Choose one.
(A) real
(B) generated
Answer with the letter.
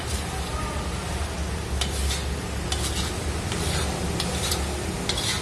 A